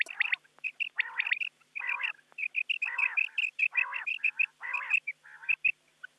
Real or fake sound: real